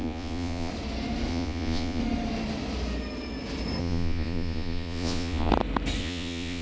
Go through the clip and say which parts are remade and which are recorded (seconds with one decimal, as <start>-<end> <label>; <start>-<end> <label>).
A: 0.0-0.7 remade; 0.7-1.3 recorded; 1.3-2.0 remade; 2.0-3.8 recorded; 3.8-5.5 remade; 5.5-6.0 recorded; 6.0-6.6 remade